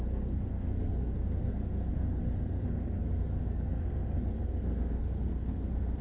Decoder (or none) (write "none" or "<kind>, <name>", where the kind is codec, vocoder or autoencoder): codec, SNAC